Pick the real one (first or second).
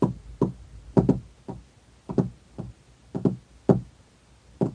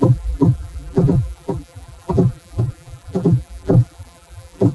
first